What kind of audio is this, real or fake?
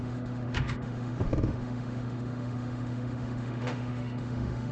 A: fake